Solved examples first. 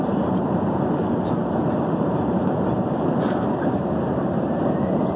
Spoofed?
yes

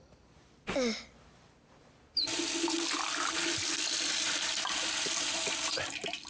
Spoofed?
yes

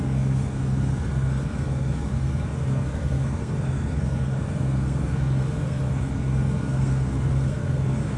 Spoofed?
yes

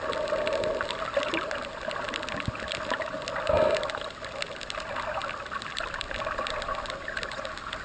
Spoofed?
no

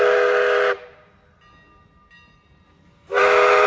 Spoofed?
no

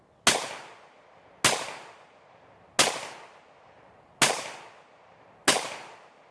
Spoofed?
no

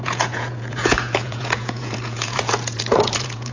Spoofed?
yes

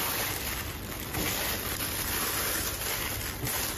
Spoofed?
no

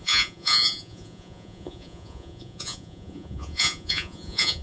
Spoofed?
yes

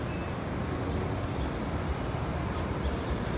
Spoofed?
yes